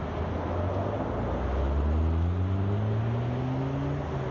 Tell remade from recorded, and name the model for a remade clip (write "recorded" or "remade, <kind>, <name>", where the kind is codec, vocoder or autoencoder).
recorded